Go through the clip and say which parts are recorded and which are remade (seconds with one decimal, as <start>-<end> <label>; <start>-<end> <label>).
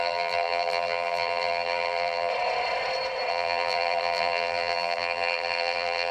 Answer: 0.0-2.3 remade; 2.3-3.3 recorded; 3.3-6.1 remade